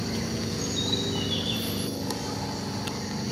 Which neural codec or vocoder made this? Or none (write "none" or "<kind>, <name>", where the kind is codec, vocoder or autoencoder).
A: none